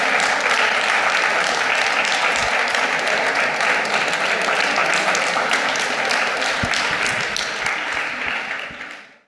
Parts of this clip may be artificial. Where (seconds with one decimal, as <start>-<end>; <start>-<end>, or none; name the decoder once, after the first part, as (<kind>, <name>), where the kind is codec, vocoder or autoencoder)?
none